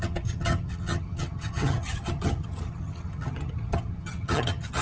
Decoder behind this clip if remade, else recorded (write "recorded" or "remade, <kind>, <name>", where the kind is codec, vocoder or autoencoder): remade, vocoder, HiFi-GAN